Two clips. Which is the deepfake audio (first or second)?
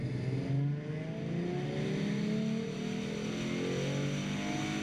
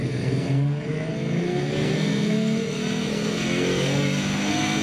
second